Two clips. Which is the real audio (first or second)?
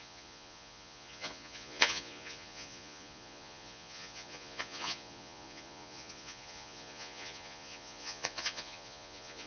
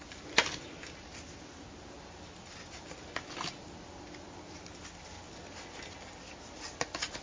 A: second